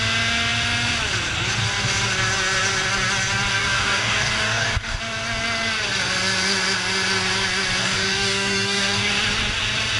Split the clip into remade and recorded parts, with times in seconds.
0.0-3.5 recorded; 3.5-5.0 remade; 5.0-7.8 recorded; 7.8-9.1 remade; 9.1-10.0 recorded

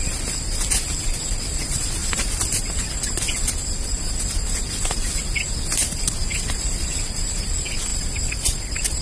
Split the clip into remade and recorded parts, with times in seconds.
0.0-7.9 recorded; 7.9-9.0 remade

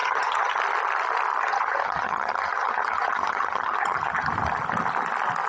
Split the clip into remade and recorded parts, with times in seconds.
0.0-0.6 remade; 0.6-1.4 recorded; 1.4-4.3 remade; 4.3-5.5 recorded

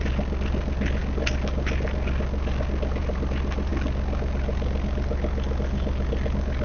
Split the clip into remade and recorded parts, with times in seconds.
0.0-6.6 recorded

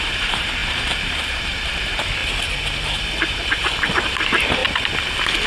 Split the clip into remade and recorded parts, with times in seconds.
0.0-2.2 remade; 2.2-3.2 recorded; 3.2-4.6 remade; 4.6-5.5 recorded

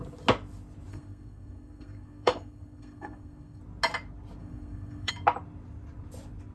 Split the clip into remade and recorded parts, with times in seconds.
0.0-0.9 recorded; 0.9-3.6 remade; 3.6-4.4 recorded; 4.4-5.1 remade; 5.1-6.5 recorded

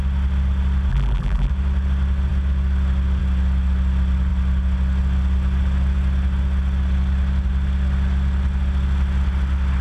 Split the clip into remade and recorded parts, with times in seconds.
0.0-0.9 recorded; 0.9-1.5 remade; 1.5-9.8 recorded

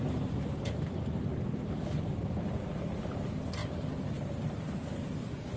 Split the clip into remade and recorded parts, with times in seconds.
0.0-1.3 recorded; 1.3-2.1 remade; 2.1-5.6 recorded